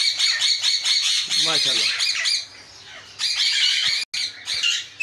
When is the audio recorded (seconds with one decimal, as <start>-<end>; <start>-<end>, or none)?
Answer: 0.0-5.0